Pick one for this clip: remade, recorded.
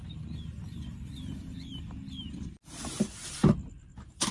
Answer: recorded